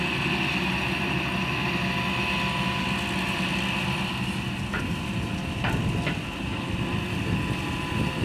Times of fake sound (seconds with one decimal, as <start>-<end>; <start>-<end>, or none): 6.5-7.3